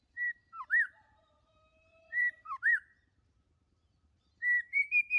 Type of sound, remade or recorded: remade